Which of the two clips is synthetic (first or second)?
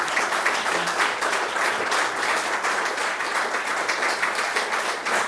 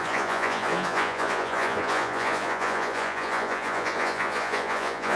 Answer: second